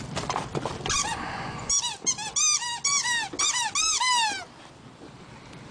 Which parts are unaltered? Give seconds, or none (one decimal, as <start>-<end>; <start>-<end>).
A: 0.0-1.0; 1.7-5.7